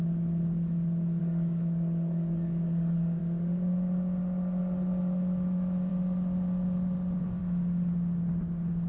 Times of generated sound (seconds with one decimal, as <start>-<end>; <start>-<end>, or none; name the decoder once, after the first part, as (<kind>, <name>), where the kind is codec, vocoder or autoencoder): 1.2-3.2 (codec, DAC)